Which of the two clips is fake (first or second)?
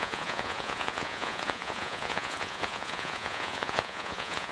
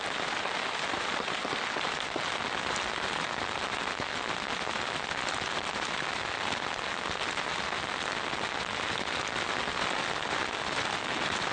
first